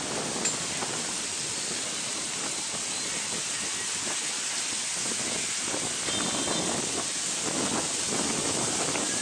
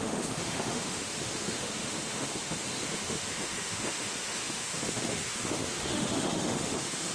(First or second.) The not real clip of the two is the second